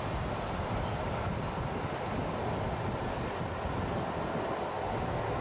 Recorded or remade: recorded